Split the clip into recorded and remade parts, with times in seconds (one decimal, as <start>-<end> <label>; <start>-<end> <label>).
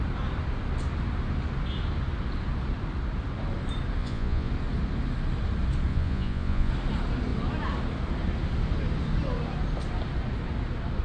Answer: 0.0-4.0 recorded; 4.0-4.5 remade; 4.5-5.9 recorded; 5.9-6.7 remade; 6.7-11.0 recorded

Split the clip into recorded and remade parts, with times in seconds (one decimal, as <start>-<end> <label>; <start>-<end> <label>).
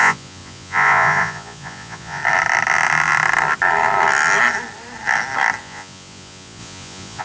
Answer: 0.0-2.2 remade; 2.2-5.6 recorded; 5.6-7.2 remade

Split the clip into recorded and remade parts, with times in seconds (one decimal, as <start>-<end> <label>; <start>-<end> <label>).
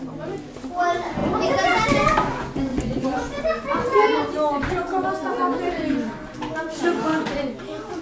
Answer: 0.0-2.7 recorded; 2.7-3.4 remade; 3.4-8.0 recorded